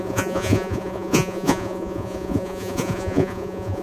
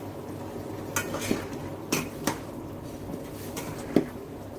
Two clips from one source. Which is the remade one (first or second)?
first